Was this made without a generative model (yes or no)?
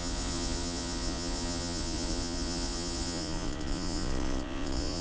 no